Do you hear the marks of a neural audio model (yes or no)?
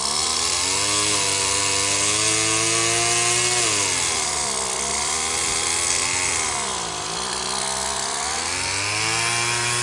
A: no